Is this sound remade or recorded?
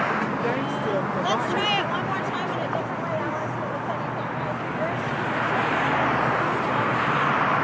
recorded